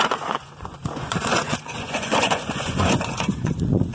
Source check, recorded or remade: remade